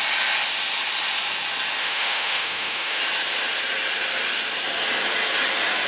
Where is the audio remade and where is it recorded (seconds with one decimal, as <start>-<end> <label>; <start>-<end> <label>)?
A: 0.0-1.8 recorded; 1.8-3.0 remade; 3.0-5.9 recorded